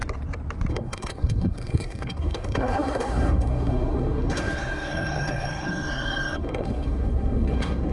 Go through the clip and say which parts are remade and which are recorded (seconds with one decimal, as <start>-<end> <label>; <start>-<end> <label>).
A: 0.0-0.7 recorded; 0.7-7.9 remade